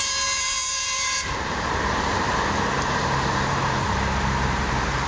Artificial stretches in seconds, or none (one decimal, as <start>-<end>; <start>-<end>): 0.0-5.1